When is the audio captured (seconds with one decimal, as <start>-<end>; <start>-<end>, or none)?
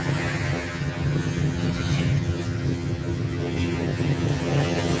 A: none